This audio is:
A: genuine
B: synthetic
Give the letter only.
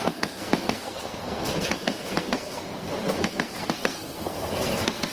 B